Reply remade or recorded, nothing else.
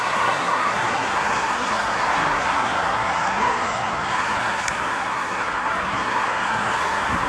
remade